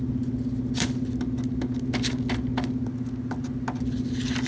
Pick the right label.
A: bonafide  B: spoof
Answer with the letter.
A